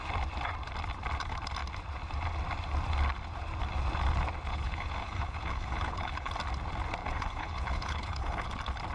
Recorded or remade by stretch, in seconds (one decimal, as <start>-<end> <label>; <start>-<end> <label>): 0.0-4.5 recorded; 4.5-6.3 remade; 6.3-7.0 recorded; 7.0-8.5 remade; 8.5-8.9 recorded